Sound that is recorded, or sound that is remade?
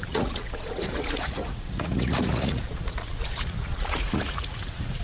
remade